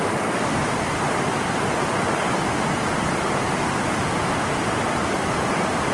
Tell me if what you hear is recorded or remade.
recorded